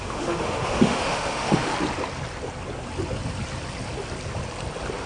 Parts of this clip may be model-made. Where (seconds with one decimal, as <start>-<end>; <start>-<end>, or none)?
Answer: 0.0-1.7